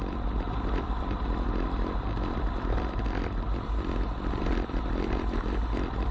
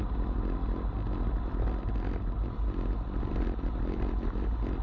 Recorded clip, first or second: second